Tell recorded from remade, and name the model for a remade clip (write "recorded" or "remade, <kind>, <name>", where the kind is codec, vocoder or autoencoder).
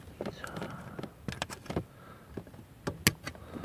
recorded